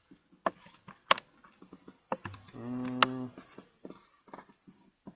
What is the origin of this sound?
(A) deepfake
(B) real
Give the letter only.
B